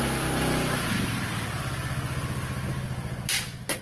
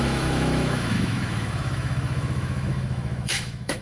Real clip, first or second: first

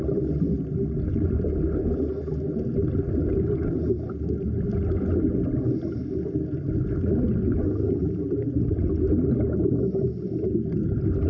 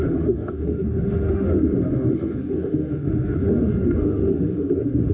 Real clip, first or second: first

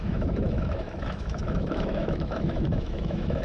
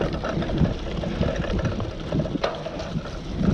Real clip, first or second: second